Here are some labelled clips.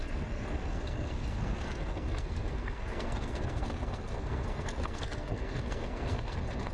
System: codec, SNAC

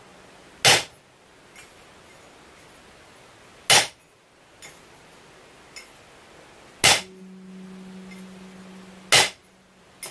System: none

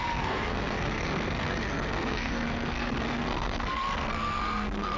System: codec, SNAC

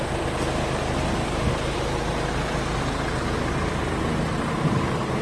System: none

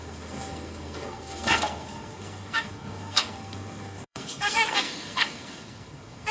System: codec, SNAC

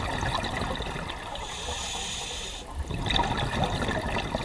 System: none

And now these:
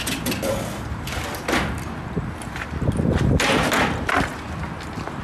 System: none